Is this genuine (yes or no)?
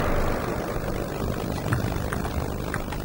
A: yes